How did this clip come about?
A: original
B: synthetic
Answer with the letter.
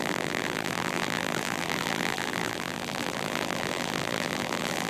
B